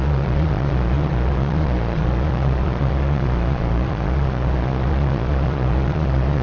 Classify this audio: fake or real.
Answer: fake